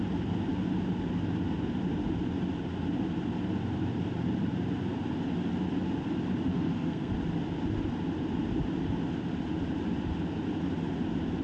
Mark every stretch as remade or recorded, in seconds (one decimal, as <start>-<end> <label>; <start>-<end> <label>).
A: 0.0-6.5 recorded; 6.5-7.1 remade; 7.1-11.4 recorded